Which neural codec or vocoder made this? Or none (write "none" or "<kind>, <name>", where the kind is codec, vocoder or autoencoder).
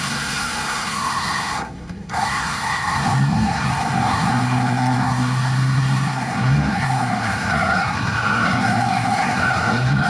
codec, SNAC